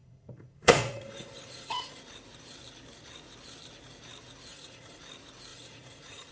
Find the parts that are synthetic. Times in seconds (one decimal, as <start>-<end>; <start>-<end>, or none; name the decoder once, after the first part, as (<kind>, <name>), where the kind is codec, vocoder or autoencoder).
0.0-2.0 (vocoder, Vocos); 4.5-5.0; 5.5-6.3